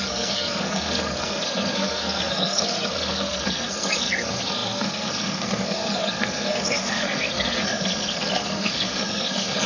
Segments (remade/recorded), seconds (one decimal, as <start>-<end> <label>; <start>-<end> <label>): 0.0-9.7 remade